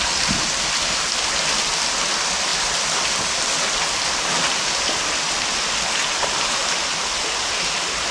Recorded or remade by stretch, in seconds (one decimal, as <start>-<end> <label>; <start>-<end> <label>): 0.0-8.1 recorded